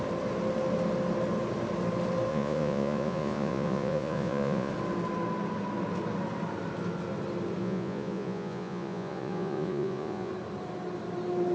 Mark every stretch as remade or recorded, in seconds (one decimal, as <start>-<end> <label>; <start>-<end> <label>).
0.0-2.3 recorded; 2.3-4.7 remade; 4.7-7.6 recorded; 7.6-10.3 remade; 10.3-11.5 recorded